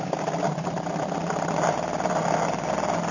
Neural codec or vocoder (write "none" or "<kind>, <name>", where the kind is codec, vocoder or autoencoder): none